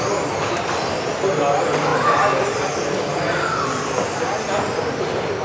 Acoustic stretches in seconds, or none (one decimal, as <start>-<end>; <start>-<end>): 0.0-5.4